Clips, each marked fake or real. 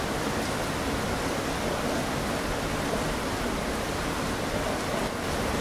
real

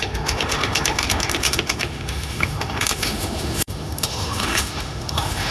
fake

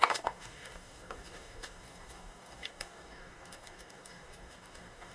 fake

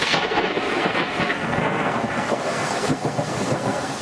fake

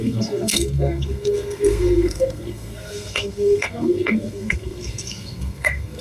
fake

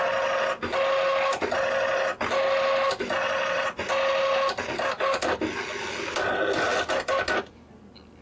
real